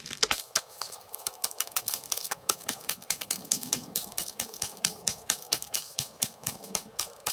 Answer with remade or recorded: remade